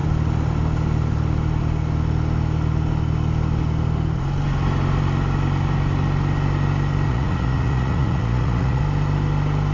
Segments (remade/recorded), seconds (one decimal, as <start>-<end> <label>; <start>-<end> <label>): 0.0-7.1 recorded; 7.1-8.8 remade; 8.8-9.7 recorded